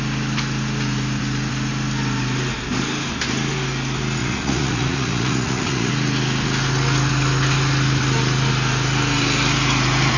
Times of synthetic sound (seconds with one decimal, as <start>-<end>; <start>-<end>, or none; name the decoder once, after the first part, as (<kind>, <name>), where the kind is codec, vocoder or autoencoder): 4.2-5.9 (vocoder, Vocos)